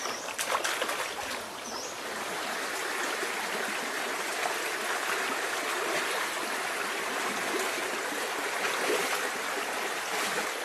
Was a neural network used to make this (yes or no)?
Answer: no